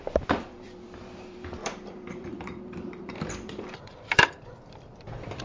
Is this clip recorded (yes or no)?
no